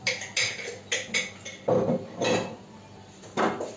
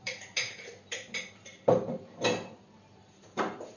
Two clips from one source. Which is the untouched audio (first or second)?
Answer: first